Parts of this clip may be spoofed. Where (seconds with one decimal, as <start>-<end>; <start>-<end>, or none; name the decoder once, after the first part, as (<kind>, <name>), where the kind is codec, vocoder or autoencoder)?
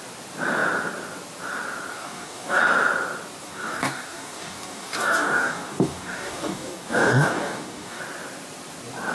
1.9-2.6 (codec, DAC); 3.4-8.0